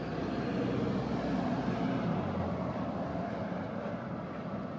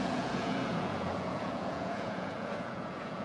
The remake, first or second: second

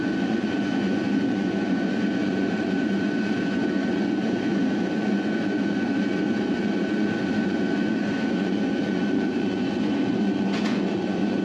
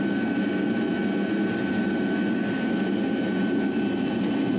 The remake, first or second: first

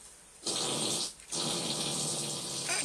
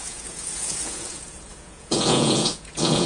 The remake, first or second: second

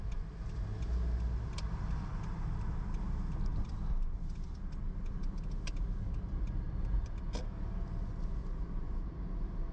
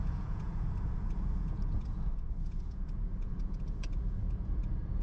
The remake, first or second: second